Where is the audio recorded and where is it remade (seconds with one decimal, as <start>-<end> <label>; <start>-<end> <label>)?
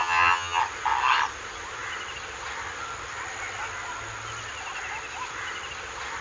0.0-0.6 remade; 0.6-6.2 recorded